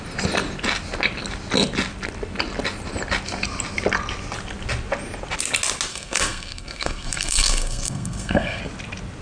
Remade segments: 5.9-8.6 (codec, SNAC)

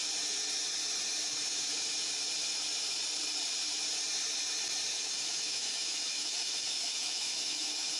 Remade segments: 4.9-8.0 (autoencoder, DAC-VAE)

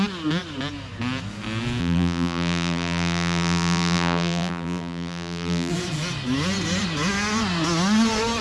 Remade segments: 1.8-5.7 (vocoder, BigVGAN v2)

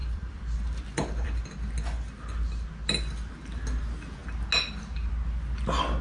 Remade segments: 0.0-1.4 (vocoder, BigVGAN v2)

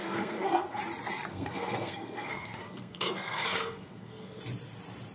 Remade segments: 0.0-0.8 (codec, SNAC); 1.3-4.4